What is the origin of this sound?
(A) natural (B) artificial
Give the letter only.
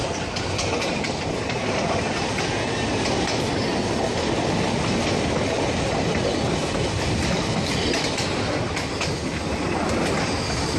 A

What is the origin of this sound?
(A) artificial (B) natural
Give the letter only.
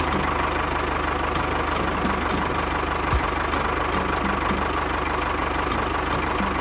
B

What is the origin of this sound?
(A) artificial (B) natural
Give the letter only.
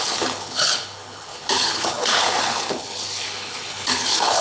A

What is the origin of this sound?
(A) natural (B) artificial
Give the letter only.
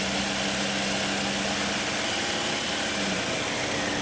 A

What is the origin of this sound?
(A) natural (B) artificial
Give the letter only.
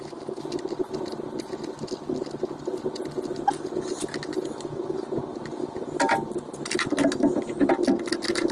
A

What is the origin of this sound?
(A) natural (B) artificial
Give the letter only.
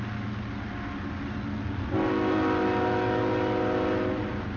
A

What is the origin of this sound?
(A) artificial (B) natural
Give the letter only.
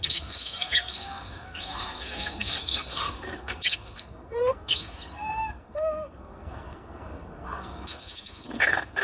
A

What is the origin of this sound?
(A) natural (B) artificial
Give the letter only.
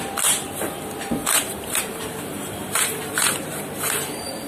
B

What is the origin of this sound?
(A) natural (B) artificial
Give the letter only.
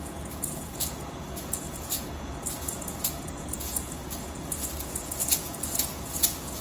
B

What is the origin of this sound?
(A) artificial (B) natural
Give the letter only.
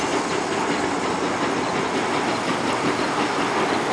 B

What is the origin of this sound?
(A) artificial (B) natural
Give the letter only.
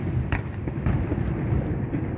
B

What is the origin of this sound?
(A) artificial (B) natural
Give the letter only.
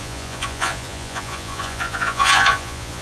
A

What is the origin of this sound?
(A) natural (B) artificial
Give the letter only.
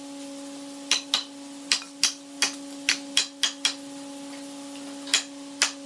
A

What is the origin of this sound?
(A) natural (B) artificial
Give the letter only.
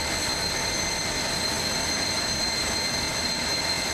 A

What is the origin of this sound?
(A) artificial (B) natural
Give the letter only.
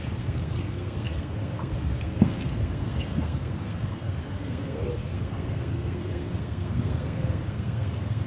A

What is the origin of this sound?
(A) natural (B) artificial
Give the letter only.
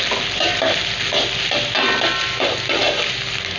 A